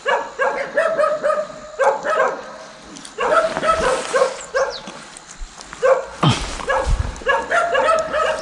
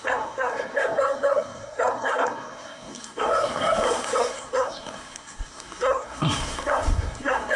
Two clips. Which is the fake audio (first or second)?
second